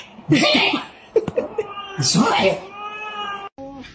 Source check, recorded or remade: recorded